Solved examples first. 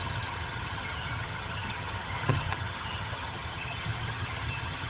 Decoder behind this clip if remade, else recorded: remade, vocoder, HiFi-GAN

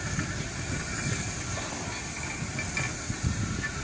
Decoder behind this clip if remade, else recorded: recorded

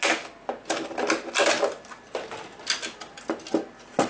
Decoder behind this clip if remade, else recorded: recorded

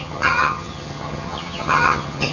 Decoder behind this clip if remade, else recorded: remade, vocoder, HiFi-GAN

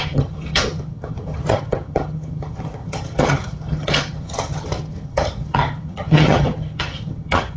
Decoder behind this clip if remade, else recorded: remade, vocoder, HiFi-GAN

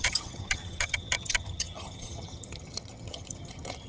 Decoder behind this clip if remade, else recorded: remade, vocoder, HiFi-GAN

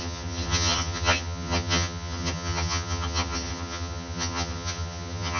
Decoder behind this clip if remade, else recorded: remade, vocoder, HiFi-GAN